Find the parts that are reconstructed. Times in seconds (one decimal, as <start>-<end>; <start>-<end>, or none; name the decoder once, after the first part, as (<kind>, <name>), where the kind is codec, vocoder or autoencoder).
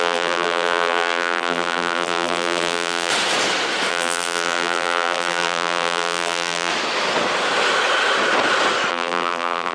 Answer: 0.0-3.1 (vocoder, BigVGAN v2); 3.9-6.7; 8.9-9.7